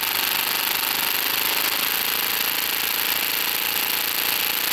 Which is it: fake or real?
real